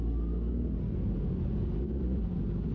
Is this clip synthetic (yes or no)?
no